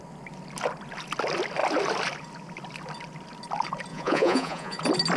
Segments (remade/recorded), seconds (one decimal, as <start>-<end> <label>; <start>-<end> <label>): 0.0-3.9 recorded; 3.9-4.8 remade; 4.8-5.2 recorded